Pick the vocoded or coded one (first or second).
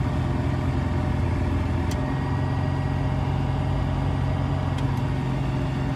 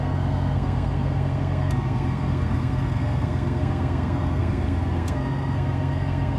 second